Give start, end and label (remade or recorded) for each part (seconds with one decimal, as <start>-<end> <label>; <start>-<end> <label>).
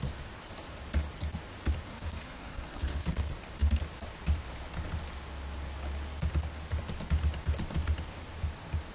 0.0-1.9 recorded; 1.9-3.2 remade; 3.2-8.9 recorded